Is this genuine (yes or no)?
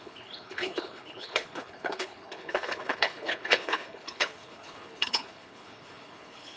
no